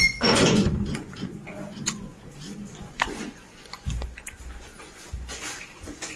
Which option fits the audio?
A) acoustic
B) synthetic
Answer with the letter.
B